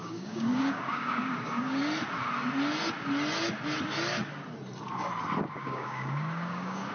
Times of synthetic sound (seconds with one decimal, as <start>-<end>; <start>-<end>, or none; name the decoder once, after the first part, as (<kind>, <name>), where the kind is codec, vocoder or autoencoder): 0.0-1.8 (codec, DAC); 5.5-6.9